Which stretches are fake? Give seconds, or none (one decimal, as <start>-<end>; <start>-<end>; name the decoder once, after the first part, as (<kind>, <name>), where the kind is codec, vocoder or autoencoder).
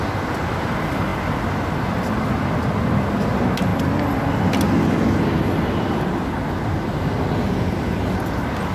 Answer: none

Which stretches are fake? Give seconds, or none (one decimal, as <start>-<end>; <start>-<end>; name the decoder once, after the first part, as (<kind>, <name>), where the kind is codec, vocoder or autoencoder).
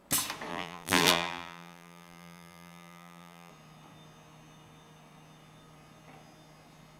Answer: 0.5-3.5 (vocoder, BigVGAN v2)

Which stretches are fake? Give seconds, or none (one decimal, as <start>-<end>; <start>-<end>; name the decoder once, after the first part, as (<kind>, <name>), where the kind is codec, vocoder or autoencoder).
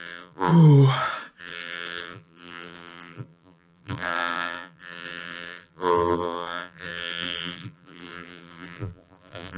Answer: 0.0-0.5 (vocoder, BigVGAN v2); 1.4-9.6